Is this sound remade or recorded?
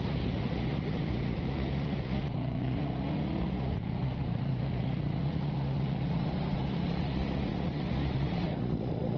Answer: remade